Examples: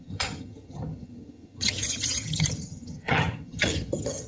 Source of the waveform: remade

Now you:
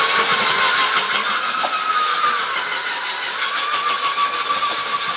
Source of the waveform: recorded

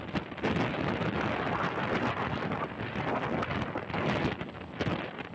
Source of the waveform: recorded